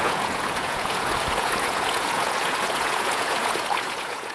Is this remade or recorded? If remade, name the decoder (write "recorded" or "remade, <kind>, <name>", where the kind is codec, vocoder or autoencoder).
remade, vocoder, Vocos